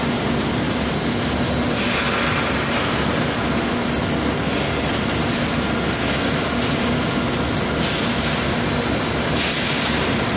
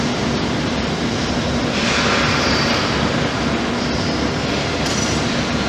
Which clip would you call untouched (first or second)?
first